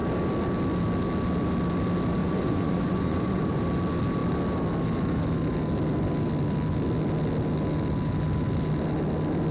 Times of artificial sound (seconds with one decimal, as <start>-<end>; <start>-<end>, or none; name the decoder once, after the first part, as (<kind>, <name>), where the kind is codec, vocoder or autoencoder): 2.2-3.6 (vocoder, Vocos)